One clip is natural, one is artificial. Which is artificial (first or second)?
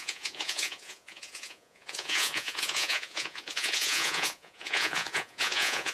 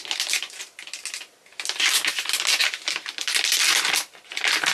first